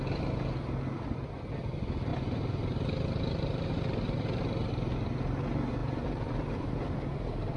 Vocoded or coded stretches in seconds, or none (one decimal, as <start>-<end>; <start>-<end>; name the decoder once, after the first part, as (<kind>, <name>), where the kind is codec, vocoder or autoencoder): 2.1-4.7 (vocoder, BigVGAN v2); 5.8-7.6